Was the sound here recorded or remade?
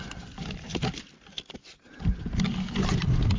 recorded